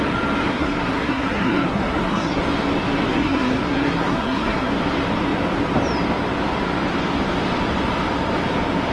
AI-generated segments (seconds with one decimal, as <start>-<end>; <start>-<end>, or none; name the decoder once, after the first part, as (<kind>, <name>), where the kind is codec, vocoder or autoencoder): 0.5-2.4 (codec, SNAC); 3.1-4.7